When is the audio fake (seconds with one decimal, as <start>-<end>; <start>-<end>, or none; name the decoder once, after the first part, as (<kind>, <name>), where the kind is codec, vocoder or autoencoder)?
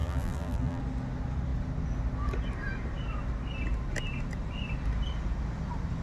0.0-0.8 (vocoder, BigVGAN v2)